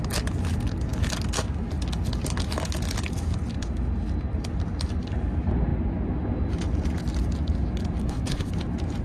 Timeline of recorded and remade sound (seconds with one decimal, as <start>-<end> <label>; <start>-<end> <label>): 0.0-8.0 recorded; 8.0-8.5 remade; 8.5-9.0 recorded